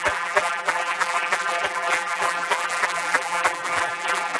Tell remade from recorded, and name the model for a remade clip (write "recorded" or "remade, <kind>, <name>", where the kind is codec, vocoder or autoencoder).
remade, vocoder, BigVGAN v2